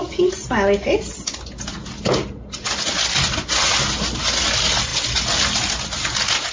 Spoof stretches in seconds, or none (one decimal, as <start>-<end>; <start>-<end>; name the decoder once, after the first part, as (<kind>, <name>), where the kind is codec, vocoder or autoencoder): none